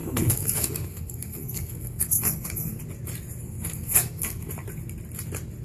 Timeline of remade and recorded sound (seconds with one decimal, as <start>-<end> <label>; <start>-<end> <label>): 0.0-2.8 remade; 2.8-3.4 recorded; 3.4-4.5 remade; 4.5-5.6 recorded